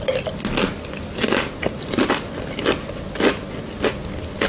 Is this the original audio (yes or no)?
yes